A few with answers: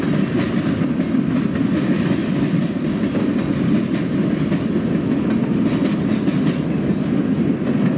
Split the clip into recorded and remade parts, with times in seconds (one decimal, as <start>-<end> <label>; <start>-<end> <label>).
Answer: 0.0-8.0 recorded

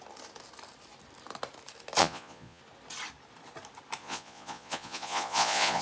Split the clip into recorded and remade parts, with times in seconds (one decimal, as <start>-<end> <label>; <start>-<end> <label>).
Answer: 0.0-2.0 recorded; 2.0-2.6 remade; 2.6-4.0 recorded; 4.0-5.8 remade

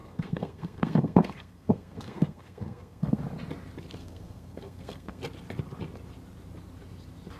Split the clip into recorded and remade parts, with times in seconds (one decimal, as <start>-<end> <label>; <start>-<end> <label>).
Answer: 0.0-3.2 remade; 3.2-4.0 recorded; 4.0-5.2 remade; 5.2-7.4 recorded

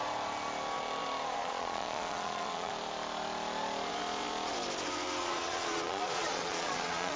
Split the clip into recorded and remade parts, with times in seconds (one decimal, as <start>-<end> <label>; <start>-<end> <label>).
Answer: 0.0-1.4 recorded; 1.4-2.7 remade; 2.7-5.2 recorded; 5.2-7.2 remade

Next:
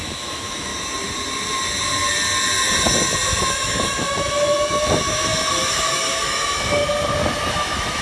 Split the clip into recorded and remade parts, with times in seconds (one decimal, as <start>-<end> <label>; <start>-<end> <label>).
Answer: 0.0-0.7 remade; 0.7-3.5 recorded; 3.5-6.8 remade; 6.8-7.5 recorded; 7.5-8.0 remade

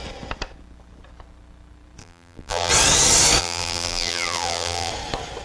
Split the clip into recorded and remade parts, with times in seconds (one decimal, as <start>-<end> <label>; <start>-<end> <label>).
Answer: 0.0-2.0 recorded; 2.0-2.7 remade; 2.7-3.4 recorded; 3.4-4.9 remade; 4.9-5.4 recorded